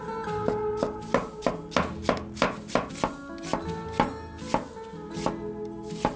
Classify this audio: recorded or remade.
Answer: recorded